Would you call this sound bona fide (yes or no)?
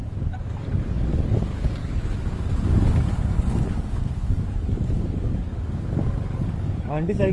no